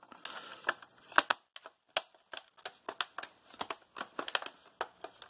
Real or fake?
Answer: real